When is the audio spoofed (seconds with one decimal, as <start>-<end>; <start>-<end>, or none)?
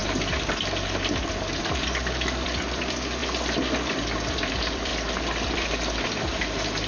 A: 1.6-3.2; 4.5-6.9